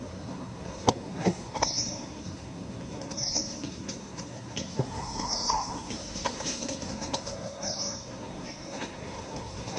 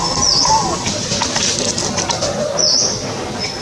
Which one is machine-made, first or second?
first